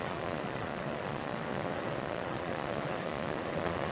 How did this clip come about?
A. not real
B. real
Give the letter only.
A